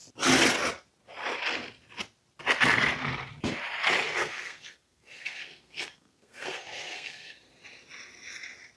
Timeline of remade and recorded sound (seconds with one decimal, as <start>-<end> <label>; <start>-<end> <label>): 0.0-4.2 recorded; 4.2-7.5 remade; 7.5-8.8 recorded